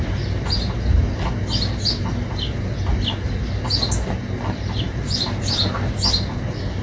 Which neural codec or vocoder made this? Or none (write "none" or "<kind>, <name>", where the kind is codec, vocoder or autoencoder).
none